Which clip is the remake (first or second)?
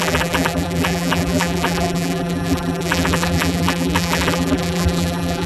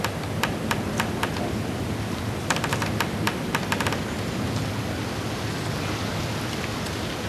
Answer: first